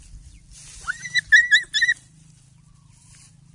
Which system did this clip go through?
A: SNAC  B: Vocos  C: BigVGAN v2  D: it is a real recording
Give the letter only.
D